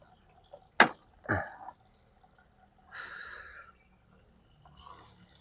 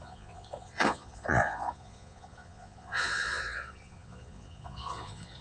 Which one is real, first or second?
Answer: first